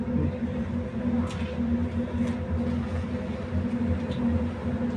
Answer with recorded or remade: recorded